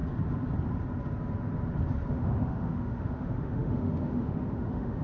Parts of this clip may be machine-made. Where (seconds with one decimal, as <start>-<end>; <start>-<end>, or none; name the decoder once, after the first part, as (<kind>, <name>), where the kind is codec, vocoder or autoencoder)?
2.1-5.0 (autoencoder, DAC-VAE)